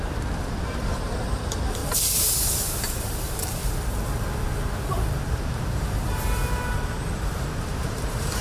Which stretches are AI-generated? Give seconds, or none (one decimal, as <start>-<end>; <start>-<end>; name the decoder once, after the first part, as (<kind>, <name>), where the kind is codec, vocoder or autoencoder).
0.0-1.8 (vocoder, BigVGAN v2); 2.8-3.6; 5.3-8.4